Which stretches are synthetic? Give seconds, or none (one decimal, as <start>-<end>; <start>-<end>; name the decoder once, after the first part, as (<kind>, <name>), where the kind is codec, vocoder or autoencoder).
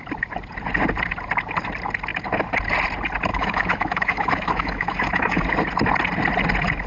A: 3.3-5.4 (autoencoder, DAC-VAE)